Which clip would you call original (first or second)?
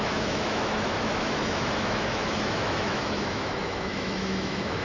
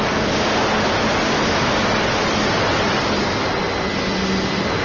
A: second